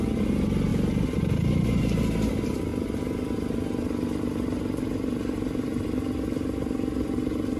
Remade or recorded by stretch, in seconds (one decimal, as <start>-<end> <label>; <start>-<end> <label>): 0.0-7.6 recorded